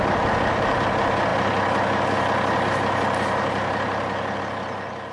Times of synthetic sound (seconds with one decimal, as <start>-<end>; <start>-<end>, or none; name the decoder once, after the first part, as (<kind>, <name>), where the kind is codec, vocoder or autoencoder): none